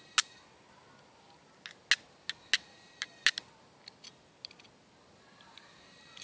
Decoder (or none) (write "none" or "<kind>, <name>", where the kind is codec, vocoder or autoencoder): none